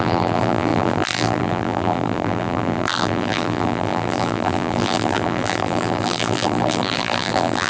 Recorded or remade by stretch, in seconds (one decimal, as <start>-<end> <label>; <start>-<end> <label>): 0.0-7.7 remade